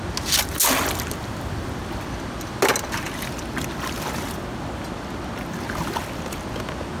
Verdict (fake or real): real